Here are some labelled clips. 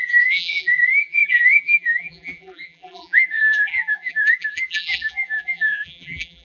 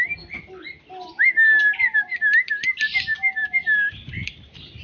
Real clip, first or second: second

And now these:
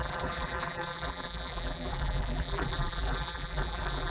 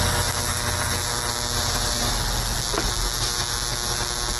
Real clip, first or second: second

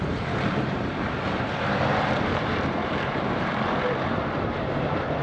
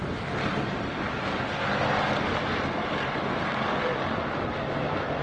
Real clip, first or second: second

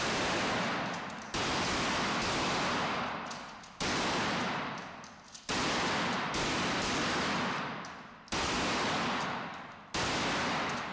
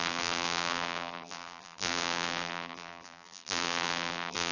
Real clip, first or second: first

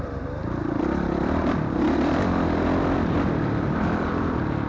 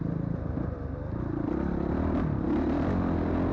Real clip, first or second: second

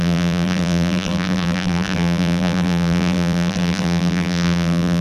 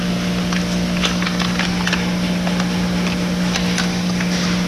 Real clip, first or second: second